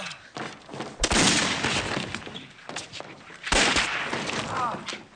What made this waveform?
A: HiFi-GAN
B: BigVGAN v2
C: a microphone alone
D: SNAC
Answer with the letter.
C